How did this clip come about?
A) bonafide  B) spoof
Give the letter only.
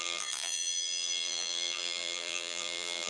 B